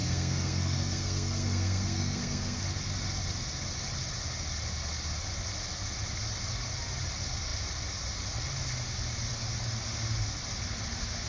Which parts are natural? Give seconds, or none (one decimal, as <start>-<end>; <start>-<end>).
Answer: 2.6-11.3